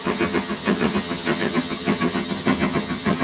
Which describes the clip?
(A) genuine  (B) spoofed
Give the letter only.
B